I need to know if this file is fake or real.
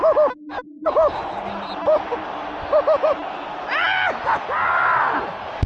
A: real